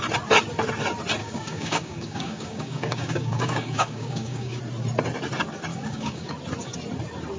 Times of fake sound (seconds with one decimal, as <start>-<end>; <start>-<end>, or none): 1.2-4.6; 5.7-6.3